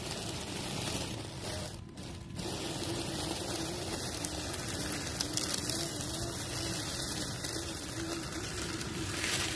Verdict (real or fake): real